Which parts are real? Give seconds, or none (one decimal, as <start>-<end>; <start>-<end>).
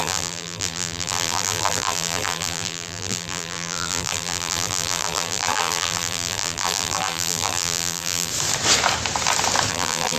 8.3-9.7